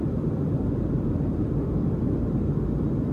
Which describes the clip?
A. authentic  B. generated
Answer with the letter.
B